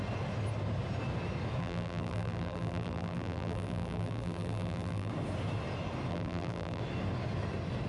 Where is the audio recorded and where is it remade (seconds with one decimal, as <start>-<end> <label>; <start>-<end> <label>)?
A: 0.0-1.6 recorded; 1.6-5.1 remade; 5.1-6.1 recorded; 6.1-6.8 remade; 6.8-7.9 recorded